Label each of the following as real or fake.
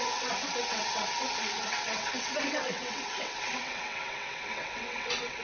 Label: fake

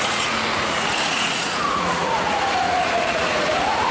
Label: fake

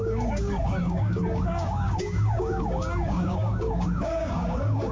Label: fake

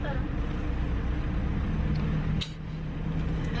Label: real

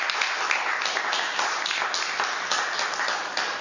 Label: real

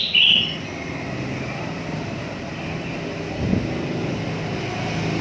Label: fake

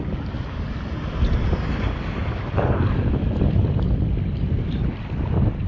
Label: real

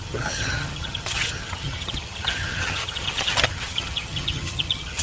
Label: fake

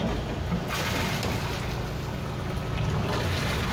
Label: real